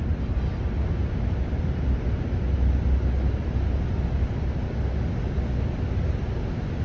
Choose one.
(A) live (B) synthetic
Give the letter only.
A